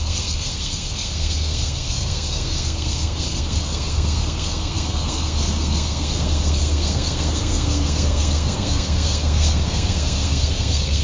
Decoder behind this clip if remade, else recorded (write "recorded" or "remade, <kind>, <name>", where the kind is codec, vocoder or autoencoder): remade, codec, SNAC